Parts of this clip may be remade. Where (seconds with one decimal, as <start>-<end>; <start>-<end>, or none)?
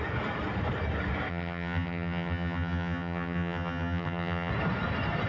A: 1.3-4.5